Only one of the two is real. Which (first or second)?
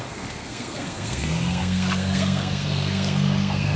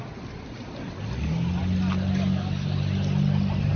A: second